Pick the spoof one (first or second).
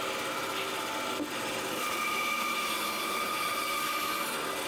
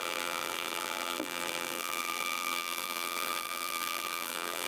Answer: second